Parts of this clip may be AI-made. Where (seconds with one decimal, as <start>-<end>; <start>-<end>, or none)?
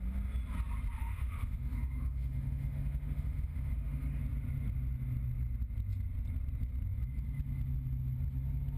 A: 1.0-4.2